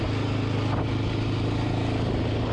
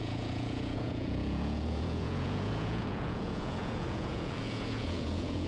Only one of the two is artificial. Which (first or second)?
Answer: second